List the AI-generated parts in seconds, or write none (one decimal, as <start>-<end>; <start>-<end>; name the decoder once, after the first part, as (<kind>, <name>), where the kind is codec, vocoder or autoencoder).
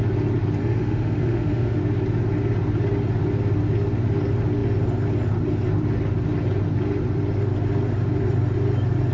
0.6-1.8 (autoencoder, DAC-VAE)